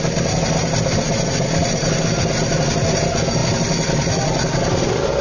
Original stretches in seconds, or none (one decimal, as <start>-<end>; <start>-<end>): 0.0-5.2